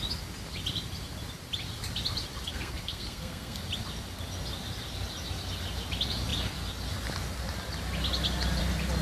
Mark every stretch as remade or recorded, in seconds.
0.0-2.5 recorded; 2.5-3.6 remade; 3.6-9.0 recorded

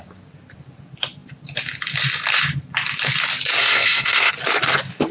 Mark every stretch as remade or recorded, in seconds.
0.0-3.5 recorded; 3.5-4.3 remade; 4.3-5.1 recorded

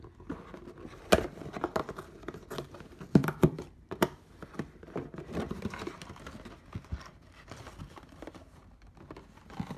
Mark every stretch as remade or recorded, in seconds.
0.0-3.2 recorded; 3.2-5.4 remade; 5.4-7.1 recorded; 7.1-8.4 remade; 8.4-9.8 recorded

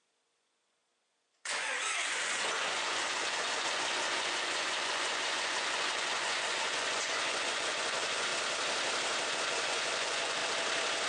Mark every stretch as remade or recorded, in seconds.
0.0-8.3 remade; 8.3-9.3 recorded; 9.3-10.4 remade; 10.4-11.1 recorded

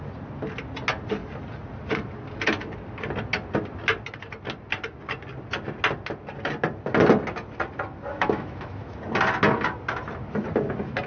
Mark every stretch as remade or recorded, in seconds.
0.0-8.1 recorded; 8.1-9.0 remade; 9.0-11.1 recorded

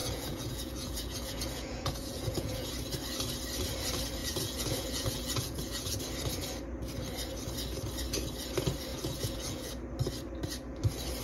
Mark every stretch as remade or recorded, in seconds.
0.0-2.7 remade; 2.7-4.2 recorded; 4.2-6.0 remade; 6.0-8.9 recorded; 8.9-9.7 remade; 9.7-11.2 recorded

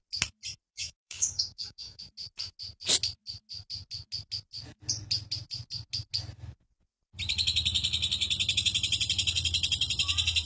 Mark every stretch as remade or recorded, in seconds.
0.0-0.7 recorded; 0.7-2.0 remade; 2.0-10.4 recorded